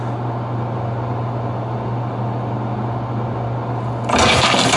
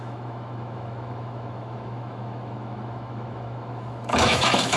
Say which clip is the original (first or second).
first